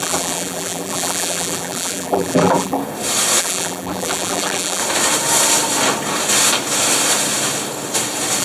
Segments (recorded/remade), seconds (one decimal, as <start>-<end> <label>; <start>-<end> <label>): 0.0-2.8 remade; 2.8-3.4 recorded; 3.4-4.8 remade; 4.8-8.4 recorded